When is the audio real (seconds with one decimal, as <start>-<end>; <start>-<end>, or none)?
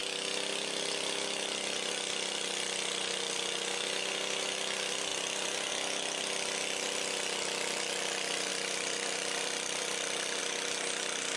0.0-5.1; 5.7-8.5; 10.4-11.4